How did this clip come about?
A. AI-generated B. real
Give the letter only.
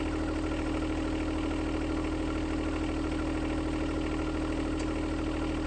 B